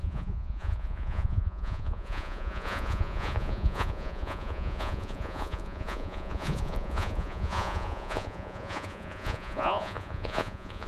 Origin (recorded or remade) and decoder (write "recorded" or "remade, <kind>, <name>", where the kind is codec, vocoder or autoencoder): remade, vocoder, Vocos